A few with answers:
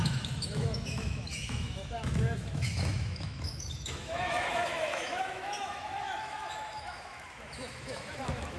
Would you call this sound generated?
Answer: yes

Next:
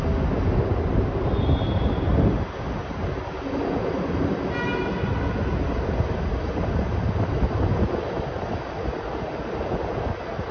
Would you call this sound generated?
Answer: no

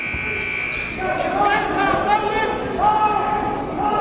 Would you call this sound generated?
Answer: no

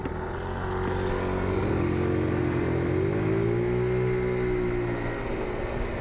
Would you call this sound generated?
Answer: no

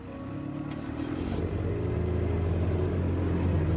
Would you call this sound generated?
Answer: no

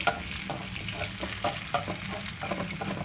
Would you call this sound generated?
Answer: no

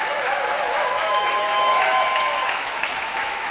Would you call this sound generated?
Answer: yes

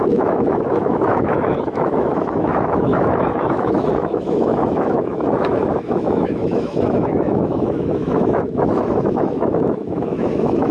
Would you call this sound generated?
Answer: yes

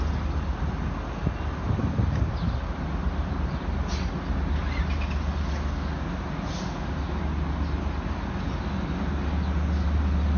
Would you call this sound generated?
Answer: no